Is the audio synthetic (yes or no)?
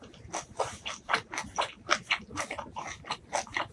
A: no